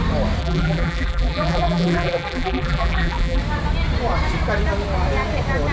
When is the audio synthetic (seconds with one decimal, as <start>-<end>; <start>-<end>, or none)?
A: 0.4-3.4